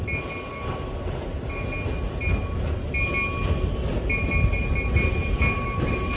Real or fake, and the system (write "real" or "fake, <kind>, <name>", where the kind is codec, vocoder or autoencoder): real